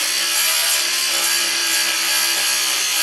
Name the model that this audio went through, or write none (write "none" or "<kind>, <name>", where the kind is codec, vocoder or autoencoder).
none